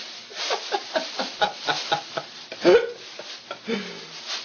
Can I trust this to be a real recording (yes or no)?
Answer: yes